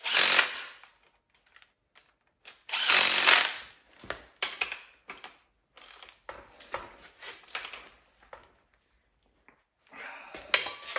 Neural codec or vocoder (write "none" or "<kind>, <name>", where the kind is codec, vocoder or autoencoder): none